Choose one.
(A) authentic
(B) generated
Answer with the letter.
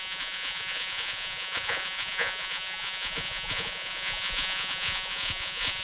B